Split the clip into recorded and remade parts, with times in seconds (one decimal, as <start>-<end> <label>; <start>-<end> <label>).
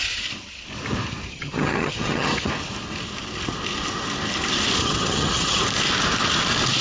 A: 0.0-1.3 recorded; 1.3-2.5 remade; 2.5-4.8 recorded; 4.8-5.6 remade; 5.6-6.8 recorded